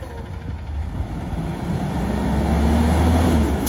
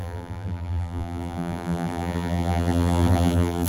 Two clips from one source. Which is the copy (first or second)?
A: second